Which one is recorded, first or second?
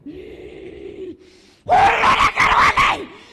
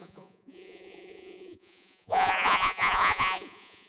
first